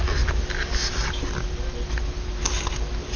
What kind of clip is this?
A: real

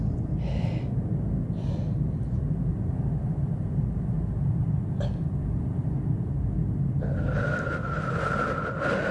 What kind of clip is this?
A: real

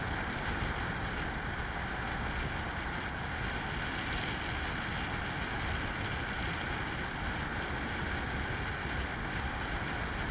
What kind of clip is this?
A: real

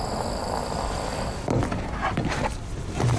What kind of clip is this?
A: real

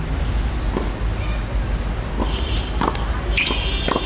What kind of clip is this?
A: real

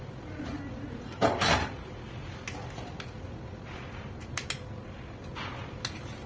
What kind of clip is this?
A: real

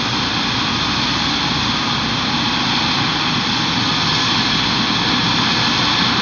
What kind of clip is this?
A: real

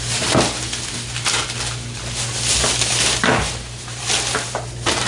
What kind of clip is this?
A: real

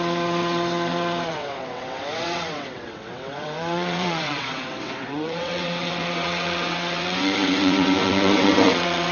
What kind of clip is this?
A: fake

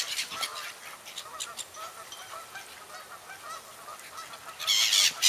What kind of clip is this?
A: real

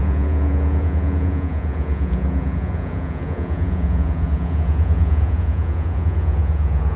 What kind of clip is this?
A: fake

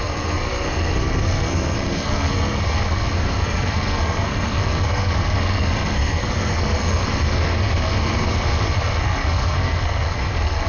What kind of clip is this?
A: fake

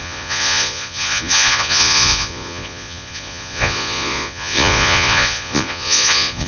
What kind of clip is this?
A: fake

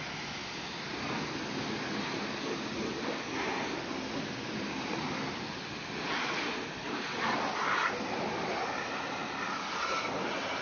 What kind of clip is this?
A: real